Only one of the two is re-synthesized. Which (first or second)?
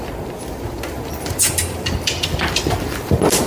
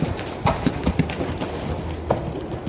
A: first